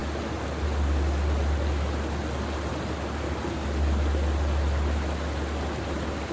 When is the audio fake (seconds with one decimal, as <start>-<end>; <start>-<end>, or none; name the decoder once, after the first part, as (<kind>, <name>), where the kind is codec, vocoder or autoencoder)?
none